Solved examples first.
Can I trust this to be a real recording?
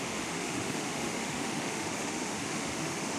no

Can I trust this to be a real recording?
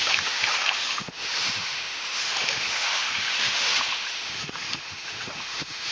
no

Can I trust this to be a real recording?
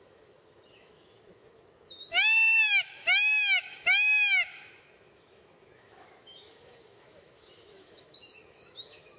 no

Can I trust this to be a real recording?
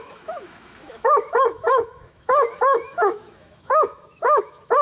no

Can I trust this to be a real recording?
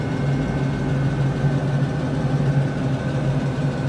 yes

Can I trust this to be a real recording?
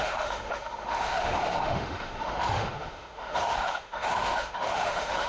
no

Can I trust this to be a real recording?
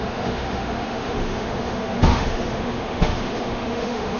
no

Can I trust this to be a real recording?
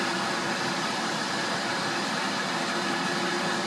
yes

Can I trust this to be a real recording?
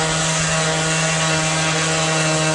yes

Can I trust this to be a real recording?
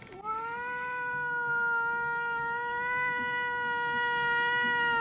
yes